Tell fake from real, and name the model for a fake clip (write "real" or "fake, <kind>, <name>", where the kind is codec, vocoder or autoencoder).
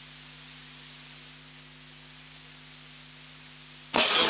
real